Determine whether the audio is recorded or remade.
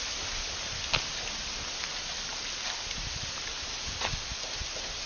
recorded